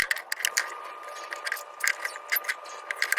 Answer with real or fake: real